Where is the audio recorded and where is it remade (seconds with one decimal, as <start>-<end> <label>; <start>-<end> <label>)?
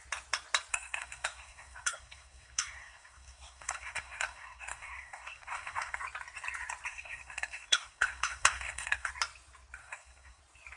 0.0-0.7 recorded; 0.7-6.0 remade; 6.0-6.9 recorded; 6.9-9.1 remade; 9.1-9.8 recorded; 9.8-10.4 remade; 10.4-10.8 recorded